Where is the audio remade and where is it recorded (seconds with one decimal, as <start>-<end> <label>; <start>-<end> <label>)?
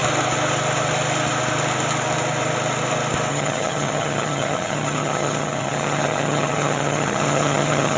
0.0-3.3 recorded; 3.3-8.0 remade